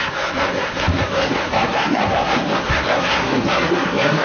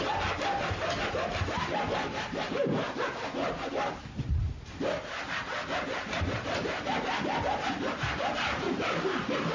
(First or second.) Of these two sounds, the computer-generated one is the first